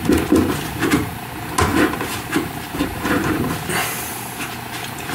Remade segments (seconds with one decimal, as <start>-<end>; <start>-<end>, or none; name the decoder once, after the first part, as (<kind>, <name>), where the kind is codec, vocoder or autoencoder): 1.7-3.5 (vocoder, BigVGAN v2)